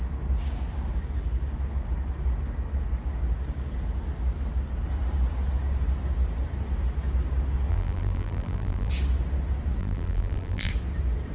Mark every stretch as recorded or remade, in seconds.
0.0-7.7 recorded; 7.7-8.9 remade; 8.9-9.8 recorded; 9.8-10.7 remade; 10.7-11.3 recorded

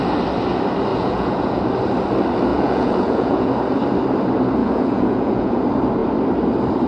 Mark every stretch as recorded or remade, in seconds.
0.0-0.9 recorded; 0.9-1.6 remade; 1.6-2.5 recorded; 2.5-3.5 remade; 3.5-4.6 recorded; 4.6-5.6 remade; 5.6-6.9 recorded

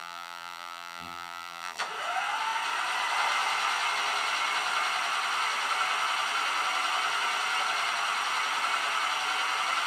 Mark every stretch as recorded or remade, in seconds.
0.0-1.8 remade; 1.8-9.9 recorded

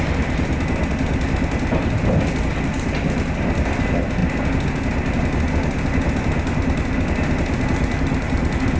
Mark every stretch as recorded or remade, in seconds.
0.0-8.8 recorded

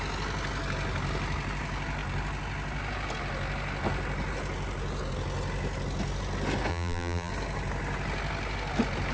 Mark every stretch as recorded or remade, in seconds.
0.0-6.7 recorded; 6.7-7.3 remade; 7.3-9.1 recorded